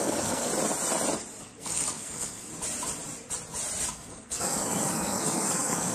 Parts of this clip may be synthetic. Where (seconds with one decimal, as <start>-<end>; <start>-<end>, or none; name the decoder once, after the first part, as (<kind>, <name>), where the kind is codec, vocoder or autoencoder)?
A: 0.0-0.5 (codec, SNAC); 1.4-2.5; 3.9-5.9